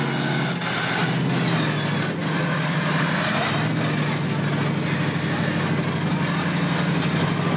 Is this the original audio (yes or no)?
yes